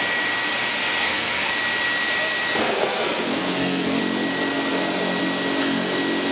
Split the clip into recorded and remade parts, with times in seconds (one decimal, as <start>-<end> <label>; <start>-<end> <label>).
0.0-1.0 recorded; 1.0-1.5 remade; 1.5-2.6 recorded; 2.6-4.0 remade; 4.0-6.3 recorded